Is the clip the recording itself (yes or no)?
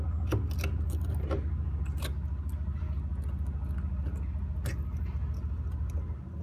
yes